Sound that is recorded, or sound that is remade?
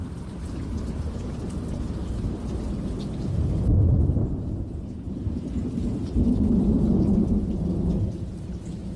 recorded